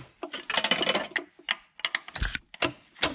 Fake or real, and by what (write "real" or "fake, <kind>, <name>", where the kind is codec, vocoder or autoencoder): real